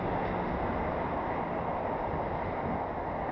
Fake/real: real